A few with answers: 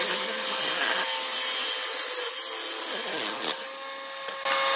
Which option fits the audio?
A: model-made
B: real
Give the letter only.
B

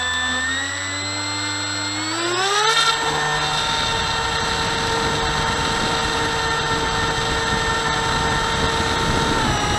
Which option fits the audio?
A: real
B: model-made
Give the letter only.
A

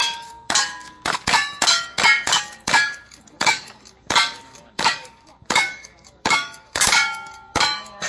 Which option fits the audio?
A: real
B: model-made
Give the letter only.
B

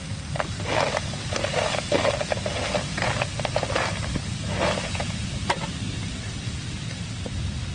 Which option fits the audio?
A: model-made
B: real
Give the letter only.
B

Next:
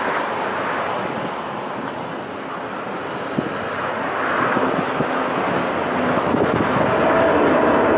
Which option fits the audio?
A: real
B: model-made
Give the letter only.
A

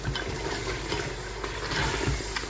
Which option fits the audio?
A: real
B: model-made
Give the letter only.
A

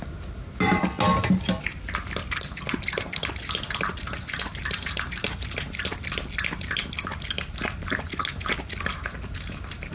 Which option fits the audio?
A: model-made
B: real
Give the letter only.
B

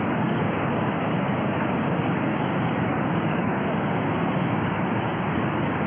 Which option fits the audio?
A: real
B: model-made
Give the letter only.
B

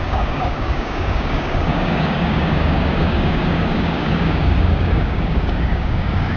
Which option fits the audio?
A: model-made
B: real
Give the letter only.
A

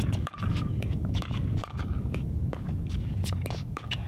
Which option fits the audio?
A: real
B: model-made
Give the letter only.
B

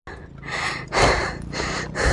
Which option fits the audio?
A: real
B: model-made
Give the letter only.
A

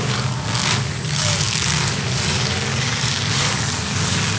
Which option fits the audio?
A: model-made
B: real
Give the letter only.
A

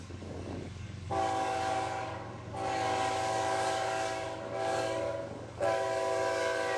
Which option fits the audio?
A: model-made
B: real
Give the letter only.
A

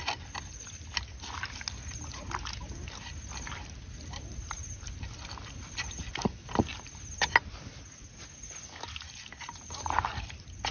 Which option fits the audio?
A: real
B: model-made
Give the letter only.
A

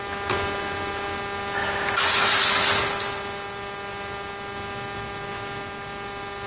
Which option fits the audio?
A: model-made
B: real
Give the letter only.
B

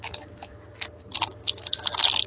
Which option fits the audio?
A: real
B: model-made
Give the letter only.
A